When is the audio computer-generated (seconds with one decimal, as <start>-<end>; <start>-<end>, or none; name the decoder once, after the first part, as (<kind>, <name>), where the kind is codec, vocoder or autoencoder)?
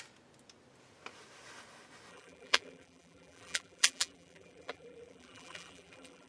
2.1-6.3 (vocoder, BigVGAN v2)